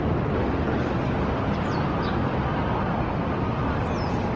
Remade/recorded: recorded